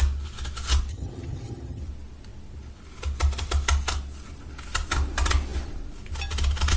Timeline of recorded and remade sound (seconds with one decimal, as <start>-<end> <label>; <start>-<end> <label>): 0.0-0.9 recorded; 0.9-1.8 remade; 1.8-6.8 recorded